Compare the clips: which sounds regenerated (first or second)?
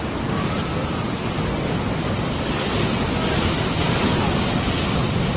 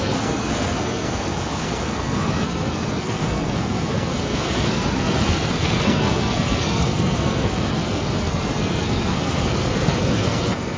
second